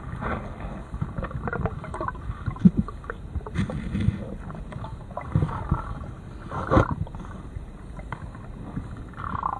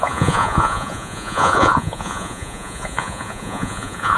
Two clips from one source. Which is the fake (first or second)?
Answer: second